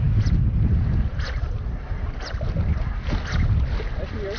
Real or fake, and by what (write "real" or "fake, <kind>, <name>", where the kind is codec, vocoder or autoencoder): real